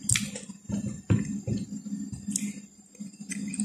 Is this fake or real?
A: real